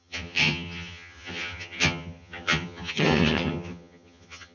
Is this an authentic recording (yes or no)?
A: no